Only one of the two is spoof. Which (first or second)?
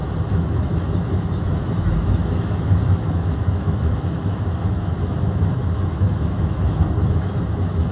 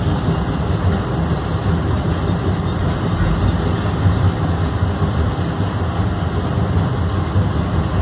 first